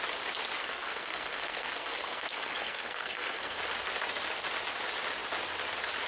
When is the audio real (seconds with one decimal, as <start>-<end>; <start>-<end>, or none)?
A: 0.0-0.6; 3.6-6.1